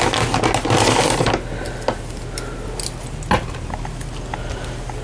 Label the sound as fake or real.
real